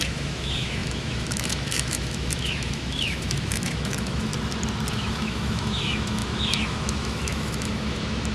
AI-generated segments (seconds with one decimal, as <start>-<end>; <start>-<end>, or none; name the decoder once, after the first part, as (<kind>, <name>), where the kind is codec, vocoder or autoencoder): 0.0-4.3 (autoencoder, DAC-VAE); 4.9-8.3